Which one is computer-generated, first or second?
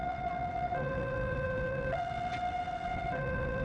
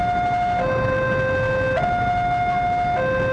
first